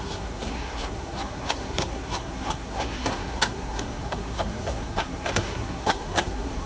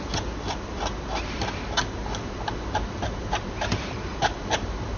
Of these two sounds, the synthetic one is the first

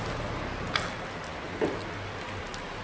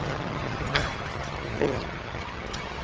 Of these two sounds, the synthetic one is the second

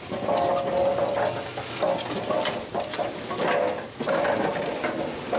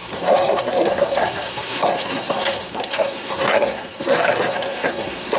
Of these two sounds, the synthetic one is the second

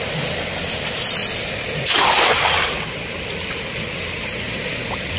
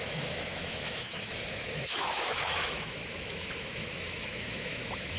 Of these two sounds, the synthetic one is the second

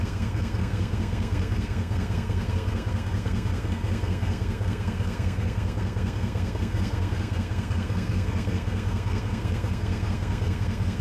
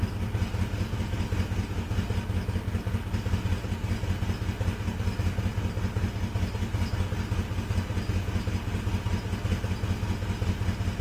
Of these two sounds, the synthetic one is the first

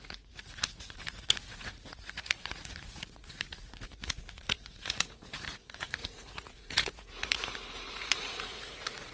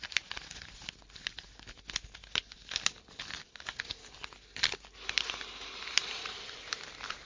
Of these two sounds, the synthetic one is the first